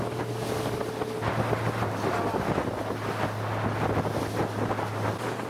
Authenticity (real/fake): real